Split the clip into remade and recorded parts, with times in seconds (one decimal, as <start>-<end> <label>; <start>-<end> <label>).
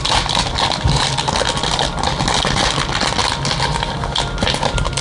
0.0-5.0 recorded